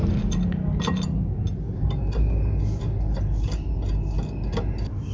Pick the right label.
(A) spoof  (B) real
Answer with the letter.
B